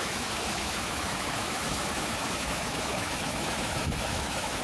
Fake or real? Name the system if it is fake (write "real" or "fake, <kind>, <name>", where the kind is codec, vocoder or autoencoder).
fake, autoencoder, DAC-VAE